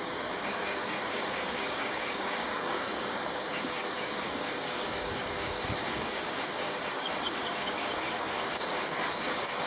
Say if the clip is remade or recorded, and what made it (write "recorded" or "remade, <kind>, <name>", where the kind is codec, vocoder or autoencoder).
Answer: remade, codec, DAC